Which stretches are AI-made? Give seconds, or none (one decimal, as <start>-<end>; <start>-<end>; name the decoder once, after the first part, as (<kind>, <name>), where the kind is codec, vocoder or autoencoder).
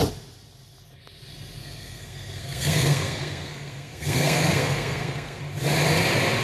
1.6-5.4 (codec, SNAC)